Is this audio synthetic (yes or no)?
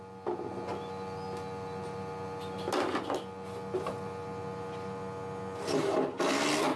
no